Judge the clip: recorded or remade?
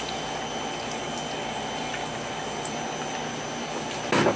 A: recorded